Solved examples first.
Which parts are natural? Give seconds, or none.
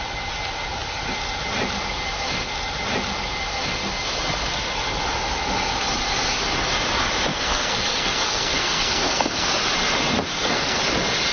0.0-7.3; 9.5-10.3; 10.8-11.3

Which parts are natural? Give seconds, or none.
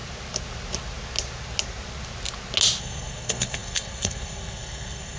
0.0-2.8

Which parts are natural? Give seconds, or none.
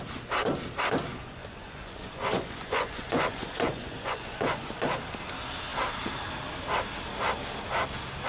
0.0-1.1; 4.7-8.3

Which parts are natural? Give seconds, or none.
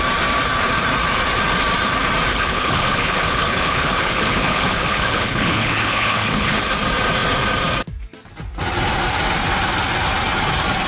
0.0-2.3; 6.7-10.9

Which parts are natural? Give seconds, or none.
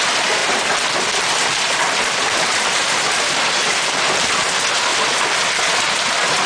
0.0-6.5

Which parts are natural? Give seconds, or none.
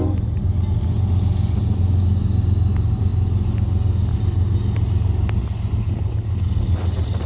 0.0-7.3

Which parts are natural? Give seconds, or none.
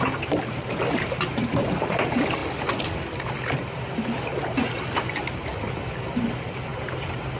2.4-4.4; 5.5-6.2; 6.7-7.4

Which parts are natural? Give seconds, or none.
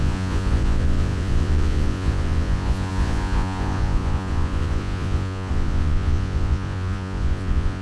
none